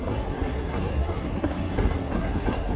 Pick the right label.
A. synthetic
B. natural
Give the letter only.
A